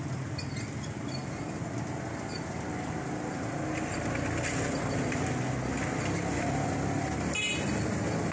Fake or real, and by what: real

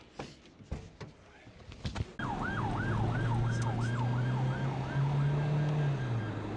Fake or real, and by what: real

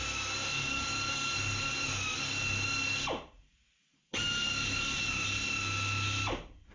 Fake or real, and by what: real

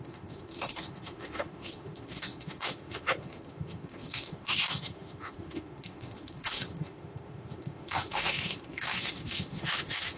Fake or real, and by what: fake, autoencoder, DAC-VAE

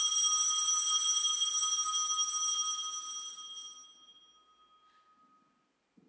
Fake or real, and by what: real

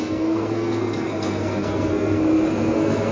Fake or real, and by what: fake, codec, SNAC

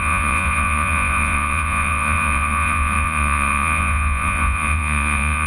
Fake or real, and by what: fake, vocoder, Vocos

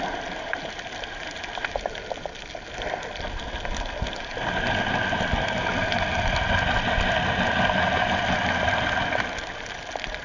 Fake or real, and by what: real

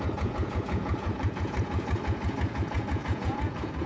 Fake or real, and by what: fake, vocoder, Vocos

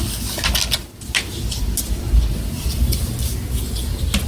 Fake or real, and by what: real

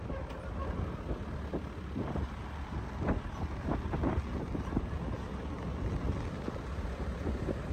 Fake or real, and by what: real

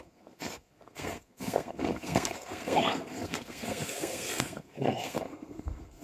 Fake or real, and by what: fake, codec, SNAC